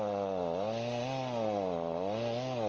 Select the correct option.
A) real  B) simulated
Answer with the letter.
A